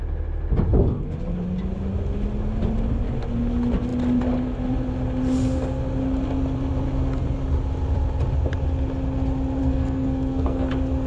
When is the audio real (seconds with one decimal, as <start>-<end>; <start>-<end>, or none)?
0.0-9.6; 10.7-11.1